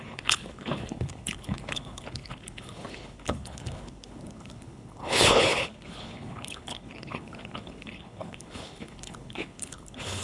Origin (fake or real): fake